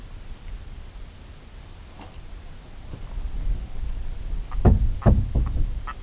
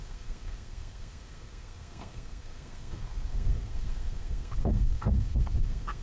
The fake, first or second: second